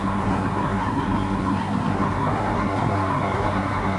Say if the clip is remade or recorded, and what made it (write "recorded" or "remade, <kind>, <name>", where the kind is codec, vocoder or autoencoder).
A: remade, codec, SNAC